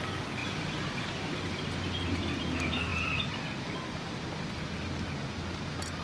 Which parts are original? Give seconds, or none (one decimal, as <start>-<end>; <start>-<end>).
0.0-6.0